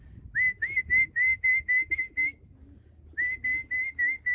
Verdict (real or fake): real